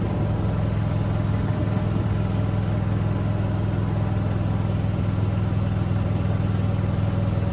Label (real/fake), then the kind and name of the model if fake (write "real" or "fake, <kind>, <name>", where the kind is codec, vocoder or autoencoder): real